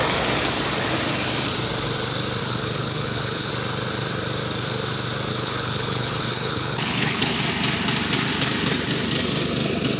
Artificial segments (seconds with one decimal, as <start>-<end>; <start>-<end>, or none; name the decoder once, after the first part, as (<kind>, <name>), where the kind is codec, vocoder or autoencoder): 2.4-3.5 (codec, HILCodec); 5.3-7.4